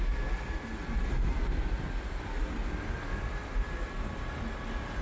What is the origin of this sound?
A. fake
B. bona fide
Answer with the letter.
B